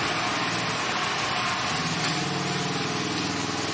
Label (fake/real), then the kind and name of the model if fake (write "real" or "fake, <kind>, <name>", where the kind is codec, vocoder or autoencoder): real